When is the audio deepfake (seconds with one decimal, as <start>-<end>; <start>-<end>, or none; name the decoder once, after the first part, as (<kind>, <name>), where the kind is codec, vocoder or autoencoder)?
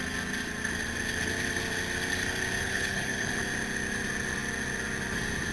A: 2.6-3.3 (codec, HILCodec)